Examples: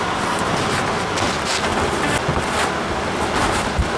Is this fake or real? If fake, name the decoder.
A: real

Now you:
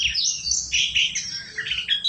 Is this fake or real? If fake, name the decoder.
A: real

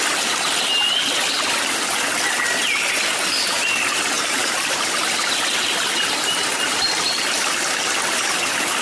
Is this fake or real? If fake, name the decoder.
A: real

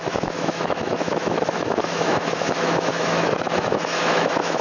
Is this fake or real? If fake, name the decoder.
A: fake, autoencoder, DAC-VAE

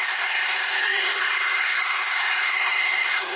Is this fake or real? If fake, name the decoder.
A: fake, codec, SNAC